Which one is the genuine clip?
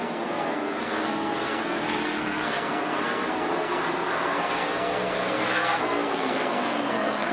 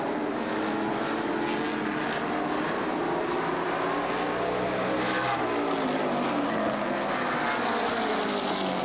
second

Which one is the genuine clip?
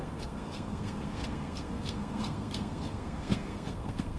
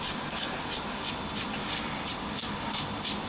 second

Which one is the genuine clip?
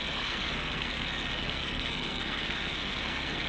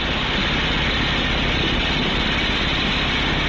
second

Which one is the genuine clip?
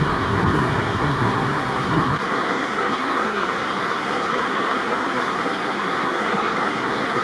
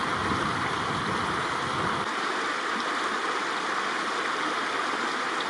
second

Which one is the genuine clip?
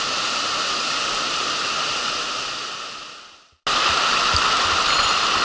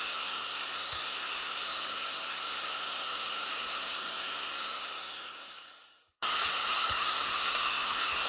first